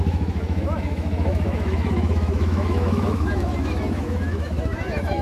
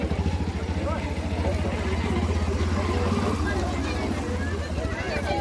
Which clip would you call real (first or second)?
second